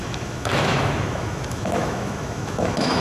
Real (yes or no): no